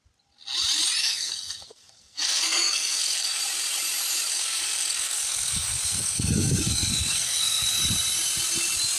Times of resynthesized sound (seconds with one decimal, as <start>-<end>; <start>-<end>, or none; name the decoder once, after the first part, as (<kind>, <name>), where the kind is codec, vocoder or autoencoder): 1.0-3.4 (codec, SNAC); 4.3-7.8